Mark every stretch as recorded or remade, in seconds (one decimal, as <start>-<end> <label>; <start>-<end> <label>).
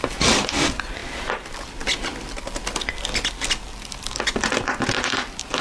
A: 0.0-5.6 recorded